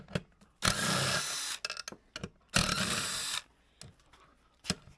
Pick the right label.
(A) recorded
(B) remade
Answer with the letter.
A